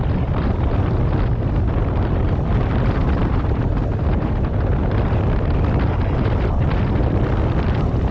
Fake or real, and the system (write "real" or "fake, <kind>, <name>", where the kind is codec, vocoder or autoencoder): fake, vocoder, BigVGAN v2